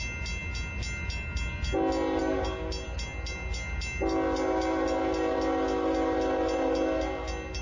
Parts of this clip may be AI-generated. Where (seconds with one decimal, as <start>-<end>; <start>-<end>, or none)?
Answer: none

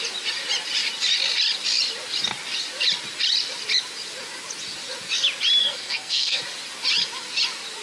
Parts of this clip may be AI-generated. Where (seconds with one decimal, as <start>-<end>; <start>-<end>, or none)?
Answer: 5.6-6.4